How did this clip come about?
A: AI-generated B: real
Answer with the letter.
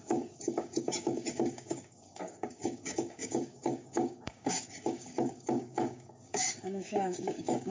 A